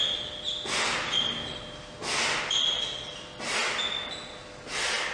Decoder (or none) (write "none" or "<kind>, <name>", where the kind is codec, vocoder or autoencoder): none